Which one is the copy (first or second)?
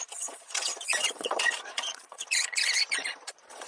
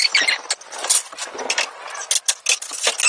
first